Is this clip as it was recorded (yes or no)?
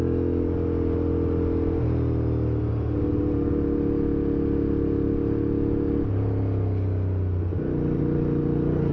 yes